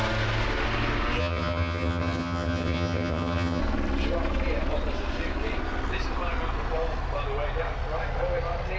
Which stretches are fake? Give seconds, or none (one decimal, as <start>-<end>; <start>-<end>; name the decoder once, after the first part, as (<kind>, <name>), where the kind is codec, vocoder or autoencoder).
1.2-3.6 (vocoder, HiFi-GAN)